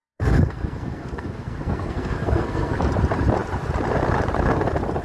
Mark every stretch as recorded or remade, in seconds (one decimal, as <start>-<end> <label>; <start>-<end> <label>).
0.0-2.9 remade; 2.9-5.0 recorded